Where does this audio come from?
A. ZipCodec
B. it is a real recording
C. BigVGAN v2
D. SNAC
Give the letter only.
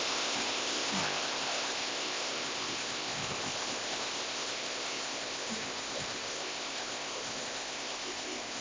A